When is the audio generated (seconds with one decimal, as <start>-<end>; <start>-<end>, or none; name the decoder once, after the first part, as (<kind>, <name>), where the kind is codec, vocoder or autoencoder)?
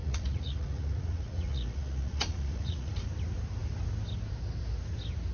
0.0-3.1 (vocoder, Vocos)